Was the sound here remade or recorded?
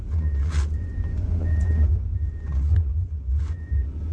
remade